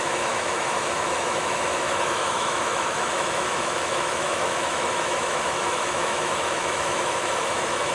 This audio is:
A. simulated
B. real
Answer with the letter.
A